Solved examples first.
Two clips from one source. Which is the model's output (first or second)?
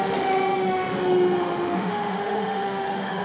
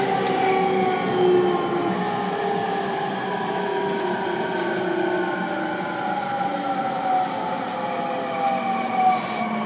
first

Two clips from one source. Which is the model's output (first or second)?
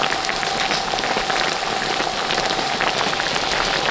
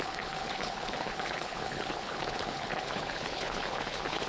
second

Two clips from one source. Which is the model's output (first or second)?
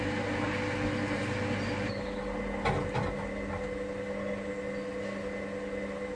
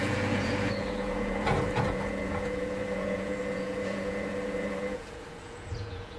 second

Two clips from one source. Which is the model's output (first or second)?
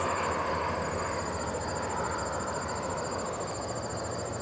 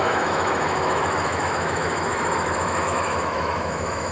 second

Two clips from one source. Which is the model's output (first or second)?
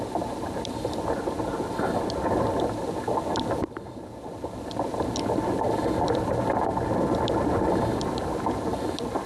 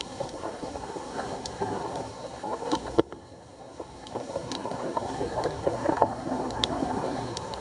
second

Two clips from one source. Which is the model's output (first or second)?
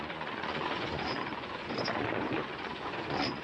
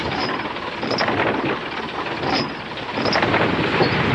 first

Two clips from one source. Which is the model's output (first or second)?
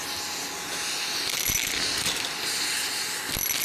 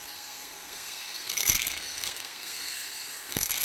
second